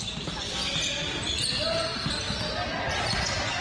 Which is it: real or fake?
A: real